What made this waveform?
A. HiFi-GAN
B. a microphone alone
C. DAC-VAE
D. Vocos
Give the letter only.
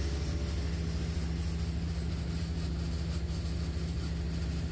B